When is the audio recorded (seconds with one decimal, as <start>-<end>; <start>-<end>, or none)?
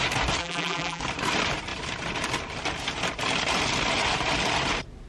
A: 0.0-0.4; 1.0-5.1